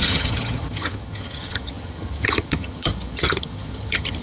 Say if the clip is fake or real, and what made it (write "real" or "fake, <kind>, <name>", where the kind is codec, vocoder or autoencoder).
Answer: fake, vocoder, HiFi-GAN